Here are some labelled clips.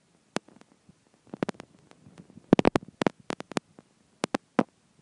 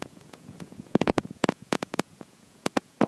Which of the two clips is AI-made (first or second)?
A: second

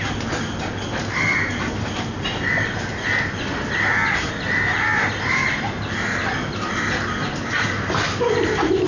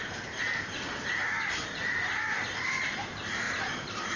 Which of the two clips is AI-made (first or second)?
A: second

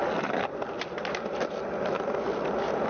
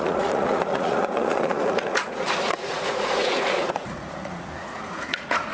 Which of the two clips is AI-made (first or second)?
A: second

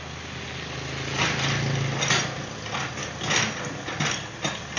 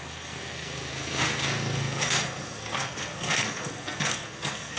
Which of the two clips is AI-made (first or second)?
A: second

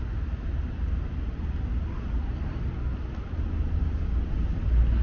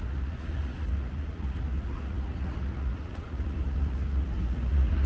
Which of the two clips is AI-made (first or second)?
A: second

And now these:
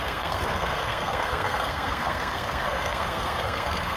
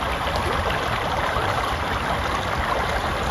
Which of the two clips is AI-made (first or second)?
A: first